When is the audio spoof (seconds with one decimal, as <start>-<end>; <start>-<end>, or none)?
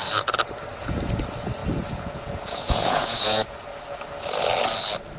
0.7-1.2; 1.6-4.0